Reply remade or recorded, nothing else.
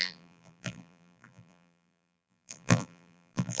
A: remade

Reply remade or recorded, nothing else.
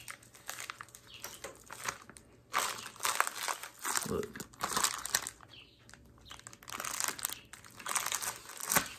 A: recorded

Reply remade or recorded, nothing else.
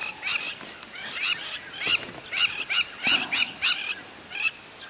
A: recorded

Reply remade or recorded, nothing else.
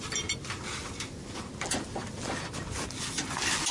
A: recorded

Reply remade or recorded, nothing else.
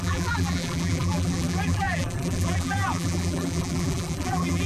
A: remade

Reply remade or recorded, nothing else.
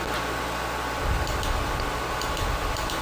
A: remade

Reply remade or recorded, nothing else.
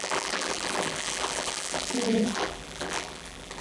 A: remade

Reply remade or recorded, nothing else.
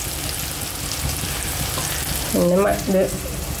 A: recorded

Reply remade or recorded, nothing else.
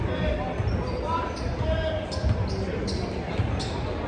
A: recorded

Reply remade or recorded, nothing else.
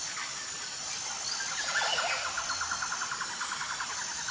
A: recorded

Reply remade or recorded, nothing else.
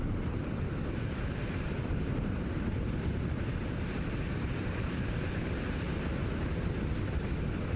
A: recorded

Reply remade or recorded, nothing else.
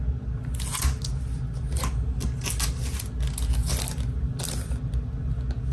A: recorded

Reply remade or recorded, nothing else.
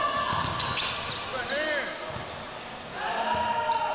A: recorded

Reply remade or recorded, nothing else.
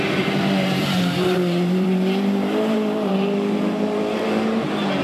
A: remade